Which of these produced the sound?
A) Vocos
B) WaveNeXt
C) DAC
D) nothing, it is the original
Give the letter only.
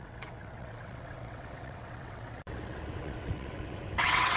B